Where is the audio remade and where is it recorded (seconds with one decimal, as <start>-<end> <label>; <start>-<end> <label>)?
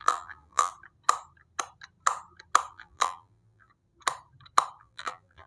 0.0-0.7 remade; 0.7-2.7 recorded; 2.7-3.7 remade; 3.7-4.8 recorded; 4.8-5.5 remade